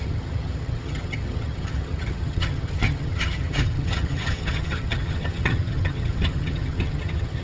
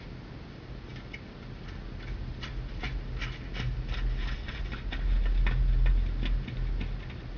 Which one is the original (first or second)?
second